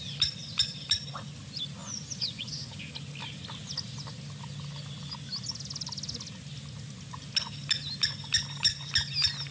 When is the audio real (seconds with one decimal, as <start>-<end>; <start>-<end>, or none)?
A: 0.0-1.8; 2.8-9.5

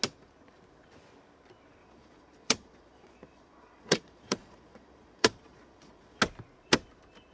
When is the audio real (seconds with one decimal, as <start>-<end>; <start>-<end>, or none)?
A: 0.0-1.8; 6.2-7.3

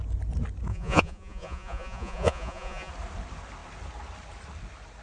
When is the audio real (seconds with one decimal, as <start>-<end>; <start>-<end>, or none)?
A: 0.0-0.7; 2.9-5.0